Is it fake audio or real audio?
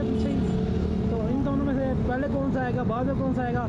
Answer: real